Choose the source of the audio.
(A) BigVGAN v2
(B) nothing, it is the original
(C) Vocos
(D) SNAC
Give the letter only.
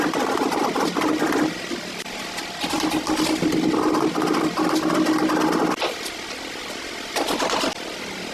B